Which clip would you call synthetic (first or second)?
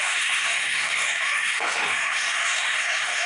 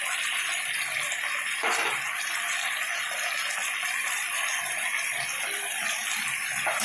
first